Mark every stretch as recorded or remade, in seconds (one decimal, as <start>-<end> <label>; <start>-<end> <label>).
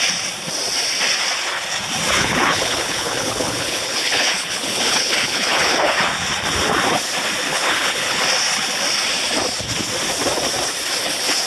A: 0.0-2.2 recorded; 2.2-6.0 remade; 6.0-7.5 recorded; 7.5-8.2 remade; 8.2-11.5 recorded